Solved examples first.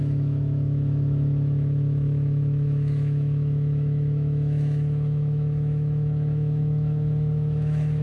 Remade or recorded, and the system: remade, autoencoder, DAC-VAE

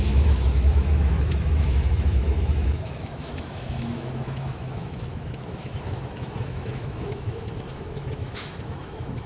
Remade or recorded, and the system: remade, autoencoder, DAC-VAE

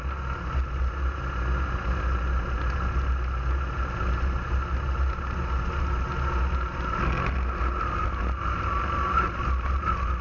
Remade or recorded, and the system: recorded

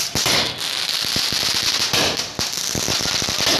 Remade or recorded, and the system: recorded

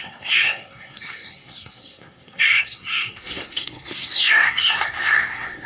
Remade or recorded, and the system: remade, codec, SNAC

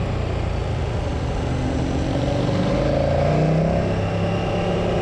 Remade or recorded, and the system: recorded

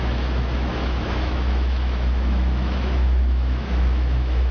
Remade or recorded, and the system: remade, autoencoder, DAC-VAE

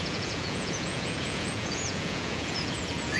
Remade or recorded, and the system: remade, vocoder, Vocos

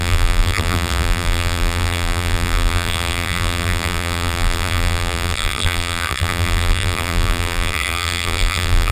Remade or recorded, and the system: remade, vocoder, BigVGAN v2